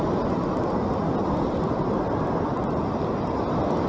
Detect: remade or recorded recorded